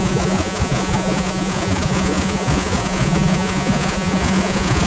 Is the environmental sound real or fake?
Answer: fake